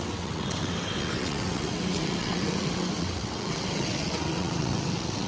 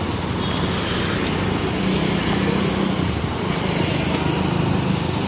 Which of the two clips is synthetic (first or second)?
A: first